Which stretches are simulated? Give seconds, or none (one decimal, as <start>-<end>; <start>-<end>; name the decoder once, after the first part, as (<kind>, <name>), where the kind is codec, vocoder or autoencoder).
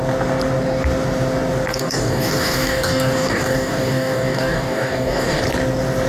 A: 1.7-5.4 (codec, DAC)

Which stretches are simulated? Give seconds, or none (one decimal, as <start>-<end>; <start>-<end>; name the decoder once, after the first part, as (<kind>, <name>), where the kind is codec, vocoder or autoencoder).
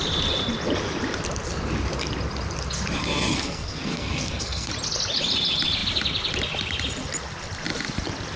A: 3.0-4.7 (codec, SNAC)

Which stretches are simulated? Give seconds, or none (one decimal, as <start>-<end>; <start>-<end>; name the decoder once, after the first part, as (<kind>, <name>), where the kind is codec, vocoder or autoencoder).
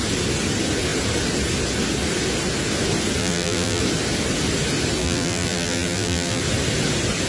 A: 3.2-3.8 (vocoder, BigVGAN v2); 5.0-6.4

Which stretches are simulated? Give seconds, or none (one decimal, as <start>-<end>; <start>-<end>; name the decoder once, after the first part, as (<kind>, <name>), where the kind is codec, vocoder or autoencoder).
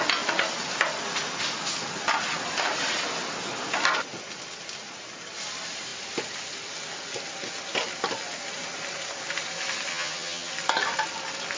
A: 9.9-10.5 (vocoder, HiFi-GAN)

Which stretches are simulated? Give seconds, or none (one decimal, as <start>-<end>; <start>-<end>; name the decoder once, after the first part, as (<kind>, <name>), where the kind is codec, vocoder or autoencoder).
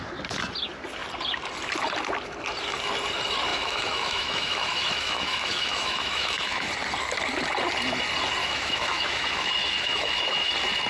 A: 3.5-6.7 (autoencoder, DAC-VAE); 8.4-10.5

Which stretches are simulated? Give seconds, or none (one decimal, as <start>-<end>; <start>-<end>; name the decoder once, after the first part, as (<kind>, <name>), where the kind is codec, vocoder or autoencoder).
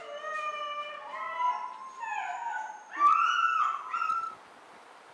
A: none